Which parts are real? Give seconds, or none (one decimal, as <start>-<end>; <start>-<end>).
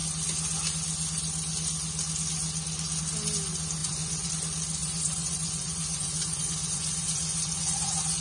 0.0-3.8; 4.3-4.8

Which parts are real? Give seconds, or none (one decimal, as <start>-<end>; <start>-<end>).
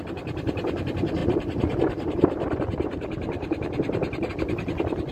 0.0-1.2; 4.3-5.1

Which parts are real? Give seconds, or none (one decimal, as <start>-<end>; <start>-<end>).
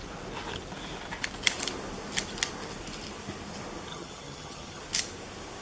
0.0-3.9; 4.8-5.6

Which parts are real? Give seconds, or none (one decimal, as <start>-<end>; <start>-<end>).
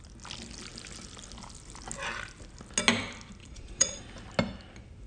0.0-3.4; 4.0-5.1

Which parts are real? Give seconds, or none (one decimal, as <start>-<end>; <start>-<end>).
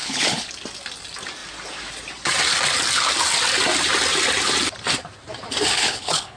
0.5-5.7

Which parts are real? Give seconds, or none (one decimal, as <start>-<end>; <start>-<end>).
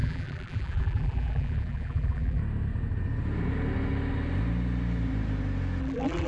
2.4-5.8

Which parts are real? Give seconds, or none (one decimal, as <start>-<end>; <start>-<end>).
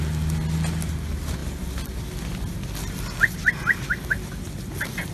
0.0-5.1